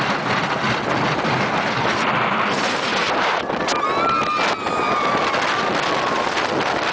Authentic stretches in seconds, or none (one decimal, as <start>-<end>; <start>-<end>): 0.0-2.9; 3.6-6.9